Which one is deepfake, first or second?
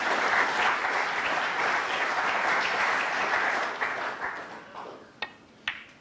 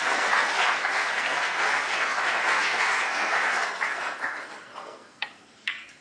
second